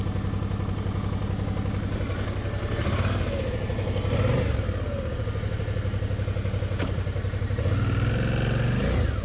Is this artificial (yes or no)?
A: no